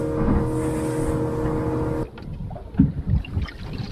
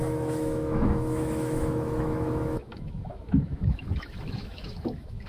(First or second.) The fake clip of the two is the second